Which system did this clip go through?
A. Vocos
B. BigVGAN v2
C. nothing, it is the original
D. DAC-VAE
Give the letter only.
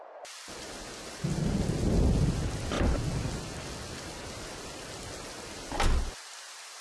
C